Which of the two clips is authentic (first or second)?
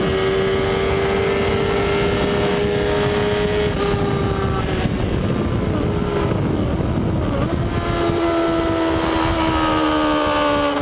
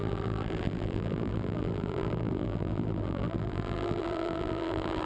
first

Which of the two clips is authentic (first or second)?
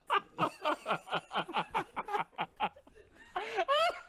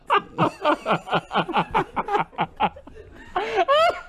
second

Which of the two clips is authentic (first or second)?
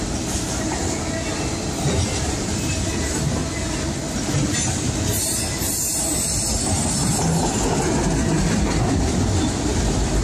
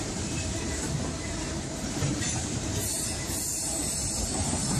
first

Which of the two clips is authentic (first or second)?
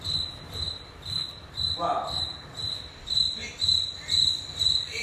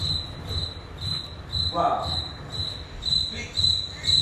second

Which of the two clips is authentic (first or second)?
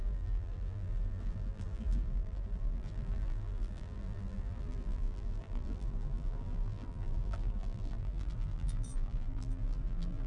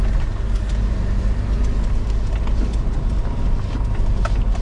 second